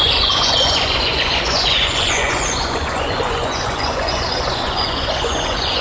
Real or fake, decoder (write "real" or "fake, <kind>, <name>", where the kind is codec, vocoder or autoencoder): fake, vocoder, Vocos